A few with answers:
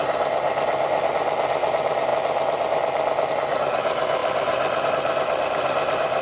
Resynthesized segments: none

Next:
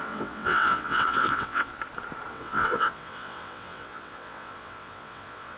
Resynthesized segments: 0.0-1.7; 2.3-5.6

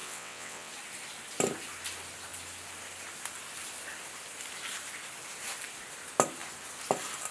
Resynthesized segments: 0.0-0.7

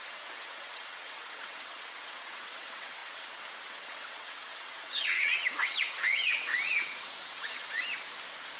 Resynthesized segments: 0.0-7.9

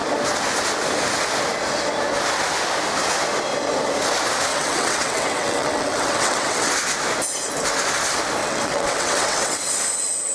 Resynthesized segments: 4.5-6.7; 8.4-9.7